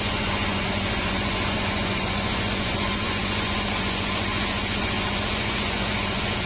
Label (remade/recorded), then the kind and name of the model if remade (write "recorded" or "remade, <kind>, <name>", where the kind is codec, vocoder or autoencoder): remade, vocoder, Vocos